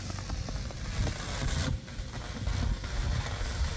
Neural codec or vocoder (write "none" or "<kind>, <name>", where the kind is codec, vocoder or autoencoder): none